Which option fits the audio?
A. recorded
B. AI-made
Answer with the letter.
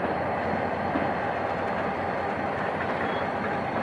A